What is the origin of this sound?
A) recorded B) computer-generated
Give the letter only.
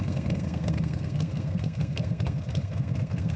B